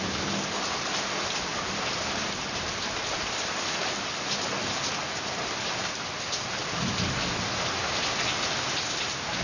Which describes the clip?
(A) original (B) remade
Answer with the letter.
A